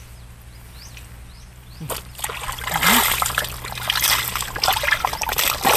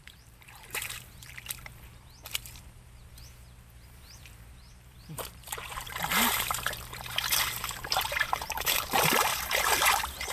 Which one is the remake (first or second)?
second